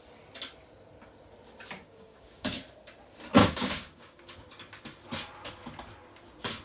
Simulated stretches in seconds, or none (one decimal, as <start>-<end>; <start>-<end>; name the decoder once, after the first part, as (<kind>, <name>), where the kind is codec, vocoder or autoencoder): 1.8-2.6 (codec, DAC); 3.4-4.2